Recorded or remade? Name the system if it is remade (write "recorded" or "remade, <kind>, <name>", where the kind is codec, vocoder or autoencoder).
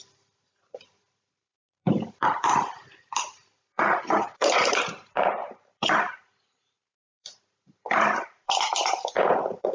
remade, vocoder, BigVGAN v2